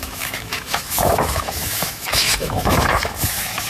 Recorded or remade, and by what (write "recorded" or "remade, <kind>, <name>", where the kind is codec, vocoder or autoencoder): remade, autoencoder, DAC-VAE